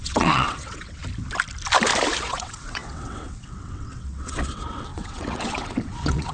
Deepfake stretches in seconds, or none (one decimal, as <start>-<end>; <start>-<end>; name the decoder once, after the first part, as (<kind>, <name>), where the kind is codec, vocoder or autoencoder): 0.0-1.0 (vocoder, WaveNeXt); 2.2-6.3